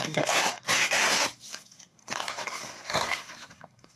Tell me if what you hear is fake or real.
fake